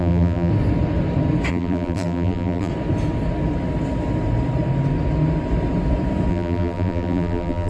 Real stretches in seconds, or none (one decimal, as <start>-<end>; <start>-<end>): 0.5-1.5; 2.7-6.3